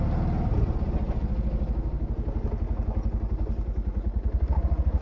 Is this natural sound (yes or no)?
yes